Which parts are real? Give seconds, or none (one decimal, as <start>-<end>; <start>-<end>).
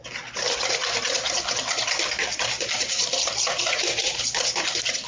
0.0-3.7; 4.2-5.1